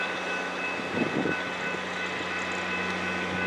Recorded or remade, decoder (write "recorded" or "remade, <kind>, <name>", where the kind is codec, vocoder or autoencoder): recorded